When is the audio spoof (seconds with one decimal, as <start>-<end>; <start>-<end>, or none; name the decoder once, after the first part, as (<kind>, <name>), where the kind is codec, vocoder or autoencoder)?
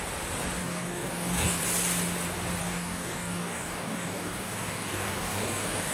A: 0.6-1.6 (codec, DAC); 2.6-5.9